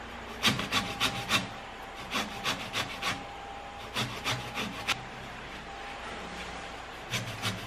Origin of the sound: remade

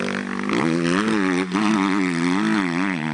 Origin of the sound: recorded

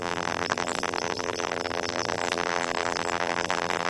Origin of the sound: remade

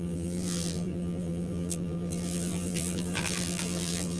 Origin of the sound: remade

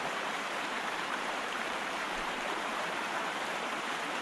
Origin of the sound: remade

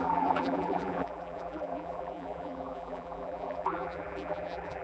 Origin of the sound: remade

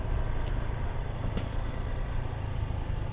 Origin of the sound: remade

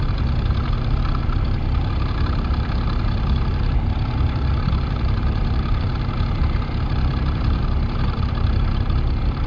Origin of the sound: remade